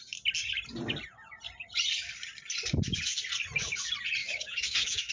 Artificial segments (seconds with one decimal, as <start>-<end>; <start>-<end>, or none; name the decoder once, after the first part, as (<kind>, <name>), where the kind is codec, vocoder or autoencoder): 4.2-5.1 (autoencoder, DAC-VAE)